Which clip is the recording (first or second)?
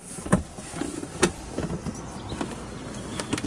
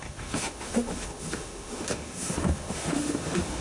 first